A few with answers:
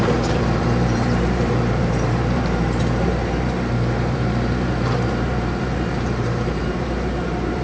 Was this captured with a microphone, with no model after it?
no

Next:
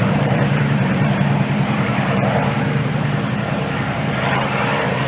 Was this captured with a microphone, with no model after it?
no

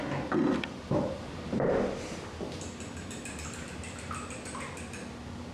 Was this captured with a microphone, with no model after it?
yes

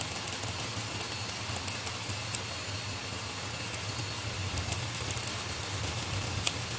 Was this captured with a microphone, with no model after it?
yes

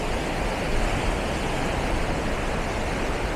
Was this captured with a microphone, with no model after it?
yes